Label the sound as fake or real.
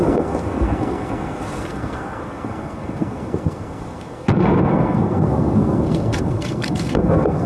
fake